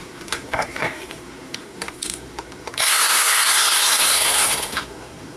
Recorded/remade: remade